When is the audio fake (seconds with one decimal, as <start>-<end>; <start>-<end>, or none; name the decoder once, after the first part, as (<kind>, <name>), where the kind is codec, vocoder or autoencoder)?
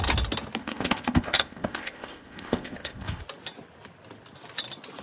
0.6-3.2 (codec, ZipCodec)